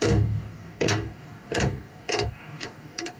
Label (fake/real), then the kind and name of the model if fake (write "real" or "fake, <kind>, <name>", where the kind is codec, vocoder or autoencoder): fake, codec, DAC